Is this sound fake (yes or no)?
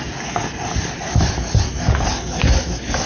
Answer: no